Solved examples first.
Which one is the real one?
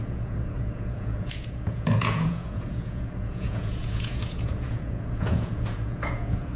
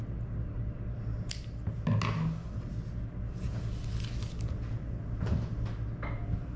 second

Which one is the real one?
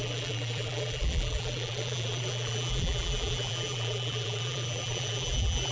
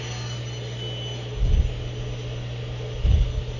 second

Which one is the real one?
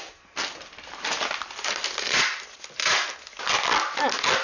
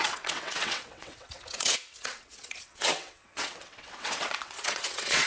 first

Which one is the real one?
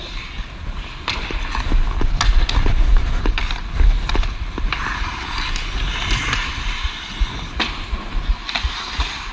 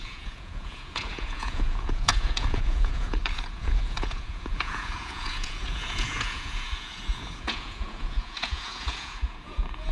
first